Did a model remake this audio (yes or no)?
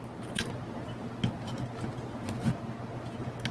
no